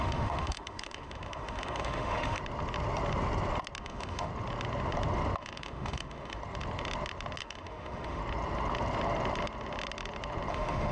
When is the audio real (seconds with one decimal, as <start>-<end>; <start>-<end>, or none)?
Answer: 2.4-3.8; 4.3-5.4; 6.4-7.4; 8.2-10.5